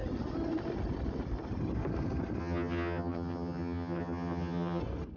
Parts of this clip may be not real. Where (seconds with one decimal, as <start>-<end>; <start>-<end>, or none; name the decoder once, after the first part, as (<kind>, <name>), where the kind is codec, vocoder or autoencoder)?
2.4-4.8 (vocoder, HiFi-GAN)

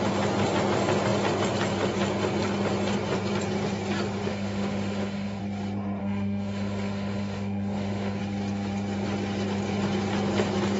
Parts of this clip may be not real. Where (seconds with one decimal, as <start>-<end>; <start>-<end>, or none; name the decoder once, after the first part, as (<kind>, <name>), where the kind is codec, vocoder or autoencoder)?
4.3-5.4 (autoencoder, DAC-VAE); 6.0-8.2